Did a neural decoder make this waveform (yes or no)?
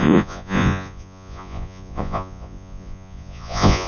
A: yes